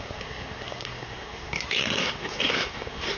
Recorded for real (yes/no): no